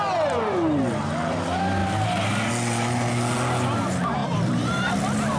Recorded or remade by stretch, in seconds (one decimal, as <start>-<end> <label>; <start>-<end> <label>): 0.0-1.8 recorded; 1.8-2.5 remade; 2.5-4.2 recorded; 4.2-4.9 remade; 4.9-5.4 recorded